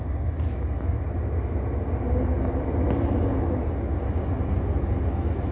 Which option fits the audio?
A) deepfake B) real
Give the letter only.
B